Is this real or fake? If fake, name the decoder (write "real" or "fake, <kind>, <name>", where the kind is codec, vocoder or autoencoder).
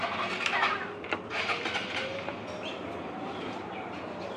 real